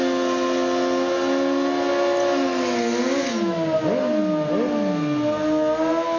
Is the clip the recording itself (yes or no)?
yes